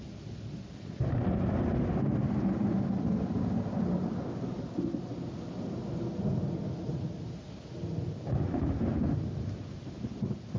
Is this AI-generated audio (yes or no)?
no